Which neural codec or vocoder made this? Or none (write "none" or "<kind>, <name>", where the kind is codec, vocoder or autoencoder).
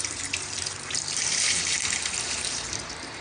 vocoder, BigVGAN v2